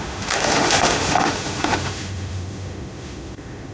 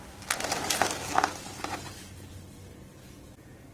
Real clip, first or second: second